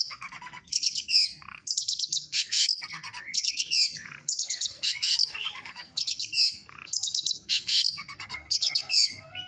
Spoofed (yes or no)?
yes